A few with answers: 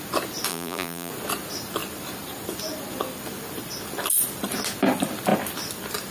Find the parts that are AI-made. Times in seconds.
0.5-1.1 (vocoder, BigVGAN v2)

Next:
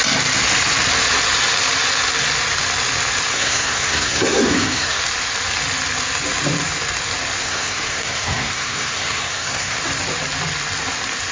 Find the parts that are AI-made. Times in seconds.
3.3-5.0 (codec, SNAC); 7.4-9.8

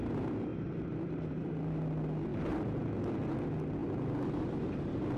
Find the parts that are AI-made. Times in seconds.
0.5-1.5 (vocoder, BigVGAN v2); 2.3-3.0; 3.8-4.8

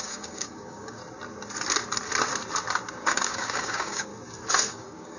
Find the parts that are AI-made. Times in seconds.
0.0-1.0 (codec, DAC); 2.9-4.1; 4.7-5.2

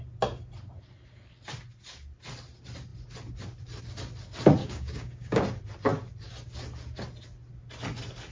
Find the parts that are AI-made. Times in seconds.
4.6-5.4 (codec, DAC)